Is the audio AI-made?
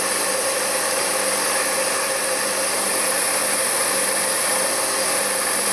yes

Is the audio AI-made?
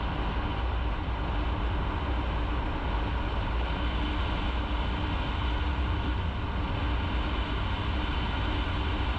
no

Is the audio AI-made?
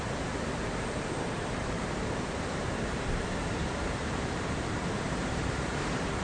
yes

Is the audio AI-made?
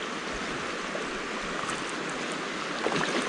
no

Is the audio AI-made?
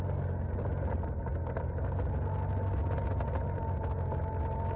no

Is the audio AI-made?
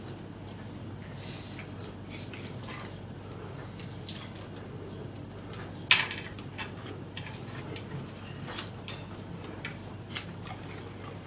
no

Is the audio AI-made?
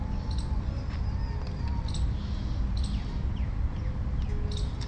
no